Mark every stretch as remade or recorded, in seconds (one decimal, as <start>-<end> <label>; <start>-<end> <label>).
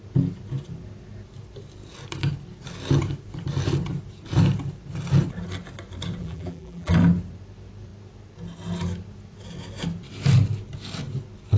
0.0-6.2 recorded; 6.2-6.9 remade; 6.9-11.6 recorded